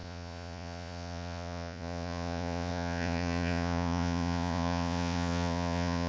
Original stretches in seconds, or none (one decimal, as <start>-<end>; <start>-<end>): none